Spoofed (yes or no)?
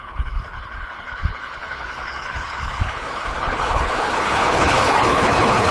yes